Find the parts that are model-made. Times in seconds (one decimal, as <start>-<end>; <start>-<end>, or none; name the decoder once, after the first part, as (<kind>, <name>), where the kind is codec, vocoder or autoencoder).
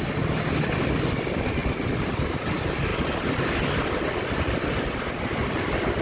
1.6-2.3 (vocoder, BigVGAN v2); 2.9-5.2